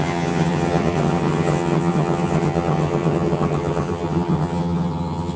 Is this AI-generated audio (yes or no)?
yes